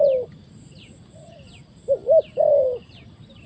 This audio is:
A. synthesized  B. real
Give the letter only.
A